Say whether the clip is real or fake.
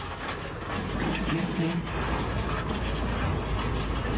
real